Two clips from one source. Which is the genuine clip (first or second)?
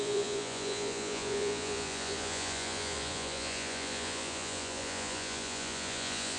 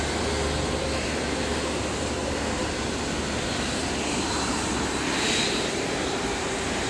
second